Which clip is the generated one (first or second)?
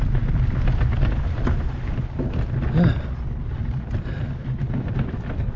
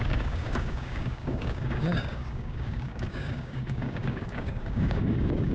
second